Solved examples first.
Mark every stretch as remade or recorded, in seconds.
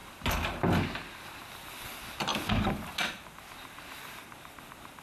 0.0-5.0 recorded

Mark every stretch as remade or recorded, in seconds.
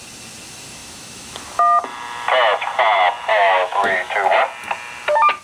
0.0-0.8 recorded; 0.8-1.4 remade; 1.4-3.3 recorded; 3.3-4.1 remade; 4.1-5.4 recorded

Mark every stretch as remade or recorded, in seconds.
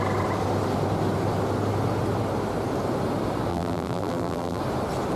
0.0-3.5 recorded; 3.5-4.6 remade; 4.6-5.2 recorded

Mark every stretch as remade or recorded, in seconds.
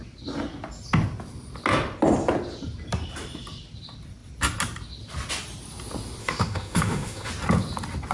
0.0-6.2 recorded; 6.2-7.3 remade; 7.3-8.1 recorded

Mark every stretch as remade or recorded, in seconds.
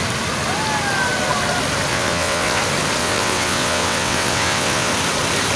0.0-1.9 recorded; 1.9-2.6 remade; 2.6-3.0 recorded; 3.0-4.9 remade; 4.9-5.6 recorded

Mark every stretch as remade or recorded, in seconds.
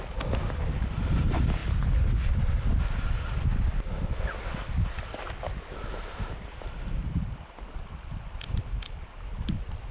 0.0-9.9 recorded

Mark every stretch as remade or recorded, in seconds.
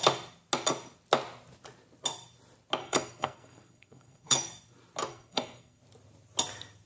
0.0-2.8 recorded; 2.8-4.5 remade; 4.5-5.1 recorded; 5.1-5.8 remade; 5.8-6.9 recorded